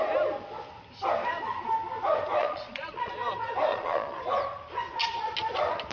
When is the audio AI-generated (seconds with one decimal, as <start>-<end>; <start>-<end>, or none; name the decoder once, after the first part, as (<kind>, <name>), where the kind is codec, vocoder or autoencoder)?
2.4-3.1 (vocoder, Vocos); 3.7-4.2